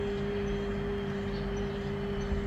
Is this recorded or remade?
recorded